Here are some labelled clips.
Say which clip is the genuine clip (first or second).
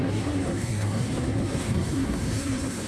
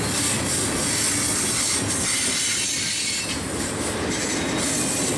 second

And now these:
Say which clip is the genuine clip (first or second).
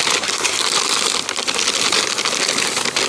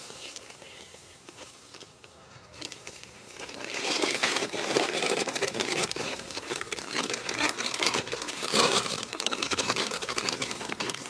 first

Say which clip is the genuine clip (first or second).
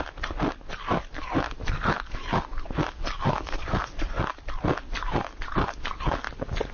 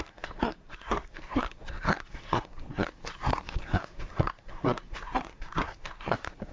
first